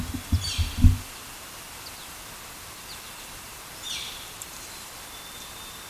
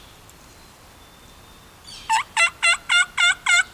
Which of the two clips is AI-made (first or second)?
first